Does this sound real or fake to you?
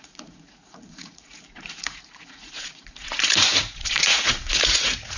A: fake